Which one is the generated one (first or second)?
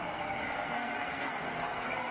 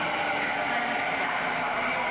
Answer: first